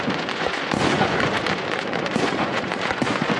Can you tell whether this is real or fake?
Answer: fake